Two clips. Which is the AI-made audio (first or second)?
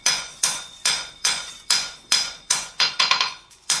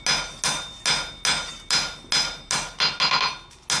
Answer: first